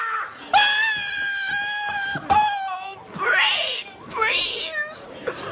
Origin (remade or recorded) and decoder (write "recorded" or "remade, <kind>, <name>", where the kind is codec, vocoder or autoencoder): recorded